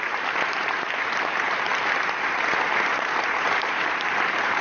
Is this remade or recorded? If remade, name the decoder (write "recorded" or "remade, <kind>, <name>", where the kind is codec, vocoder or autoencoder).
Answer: remade, vocoder, BigVGAN v2